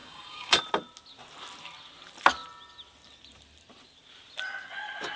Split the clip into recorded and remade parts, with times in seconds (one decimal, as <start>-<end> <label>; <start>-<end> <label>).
0.0-0.6 remade; 0.6-5.2 recorded

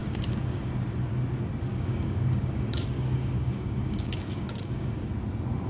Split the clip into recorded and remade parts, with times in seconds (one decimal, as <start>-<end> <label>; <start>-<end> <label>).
0.0-0.7 remade; 0.7-1.7 recorded; 1.7-5.1 remade; 5.1-5.7 recorded

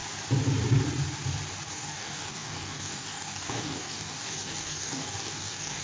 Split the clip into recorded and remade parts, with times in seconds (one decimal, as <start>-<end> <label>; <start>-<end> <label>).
0.0-1.7 recorded; 1.7-5.8 remade

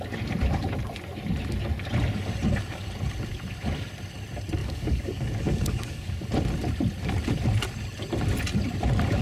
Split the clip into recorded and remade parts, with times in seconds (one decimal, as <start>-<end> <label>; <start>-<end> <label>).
0.0-4.6 recorded; 4.6-6.2 remade; 6.2-9.2 recorded

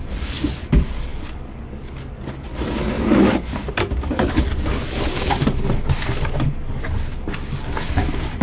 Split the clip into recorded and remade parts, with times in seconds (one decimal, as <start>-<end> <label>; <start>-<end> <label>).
0.0-8.4 remade

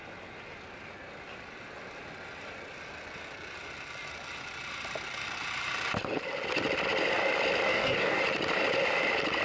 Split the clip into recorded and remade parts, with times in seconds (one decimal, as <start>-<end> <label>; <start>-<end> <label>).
0.0-7.7 recorded; 7.7-8.2 remade; 8.2-9.4 recorded

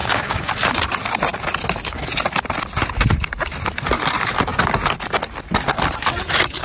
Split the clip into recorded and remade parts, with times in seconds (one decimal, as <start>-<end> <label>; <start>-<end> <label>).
0.0-0.5 remade; 0.5-6.6 recorded